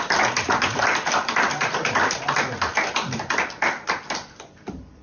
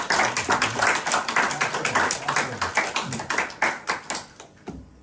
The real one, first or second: second